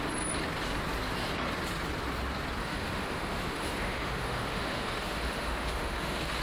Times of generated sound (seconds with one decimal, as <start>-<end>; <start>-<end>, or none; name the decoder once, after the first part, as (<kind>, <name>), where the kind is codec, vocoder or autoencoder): 2.6-6.4 (autoencoder, DAC-VAE)